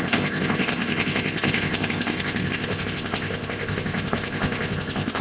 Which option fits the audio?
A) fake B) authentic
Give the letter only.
A